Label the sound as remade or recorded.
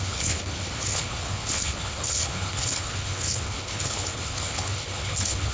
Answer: remade